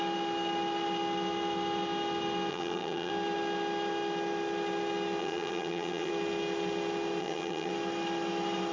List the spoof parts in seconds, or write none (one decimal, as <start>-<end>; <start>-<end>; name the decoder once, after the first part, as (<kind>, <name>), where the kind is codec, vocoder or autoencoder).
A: 2.5-3.1 (vocoder, HiFi-GAN); 5.2-6.1; 7.2-7.7